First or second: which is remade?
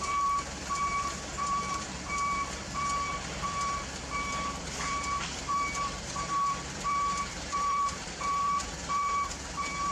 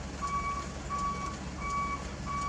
first